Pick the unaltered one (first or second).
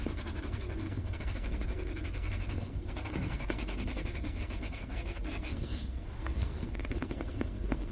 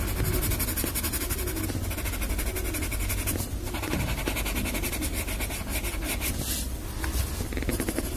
second